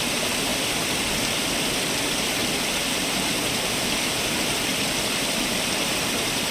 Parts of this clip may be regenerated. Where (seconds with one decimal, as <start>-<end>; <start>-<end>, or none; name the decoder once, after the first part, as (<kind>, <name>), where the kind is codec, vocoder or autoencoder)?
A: 2.4-6.1 (vocoder, BigVGAN v2)